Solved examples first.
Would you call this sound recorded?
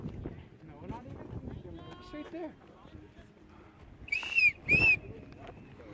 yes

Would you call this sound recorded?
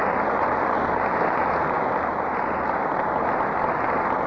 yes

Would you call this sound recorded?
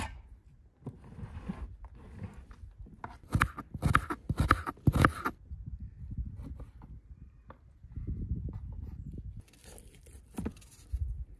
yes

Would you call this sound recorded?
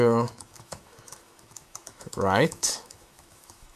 no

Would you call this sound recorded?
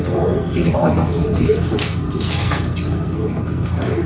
no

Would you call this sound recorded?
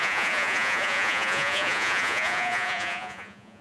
no